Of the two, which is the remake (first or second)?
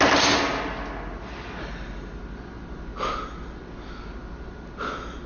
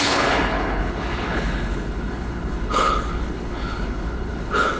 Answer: second